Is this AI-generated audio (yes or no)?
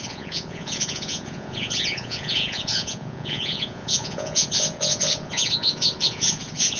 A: yes